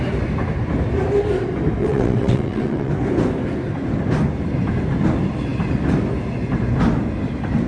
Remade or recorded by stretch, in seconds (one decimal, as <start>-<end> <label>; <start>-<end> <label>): 0.0-1.8 recorded; 1.8-2.9 remade; 2.9-7.7 recorded